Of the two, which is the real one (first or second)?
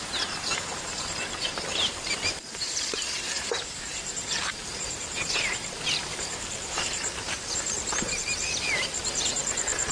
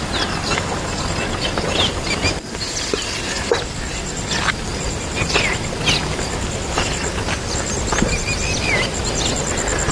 second